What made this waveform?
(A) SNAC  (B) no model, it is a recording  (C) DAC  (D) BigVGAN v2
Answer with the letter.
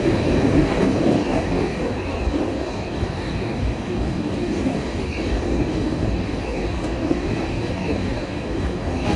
C